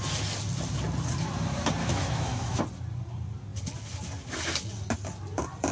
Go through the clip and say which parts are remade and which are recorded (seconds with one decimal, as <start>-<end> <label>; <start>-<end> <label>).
0.0-1.8 recorded; 1.8-2.6 remade; 2.6-5.7 recorded